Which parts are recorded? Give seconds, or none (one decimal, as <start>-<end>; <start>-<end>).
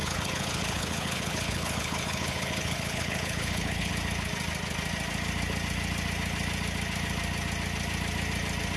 3.9-8.8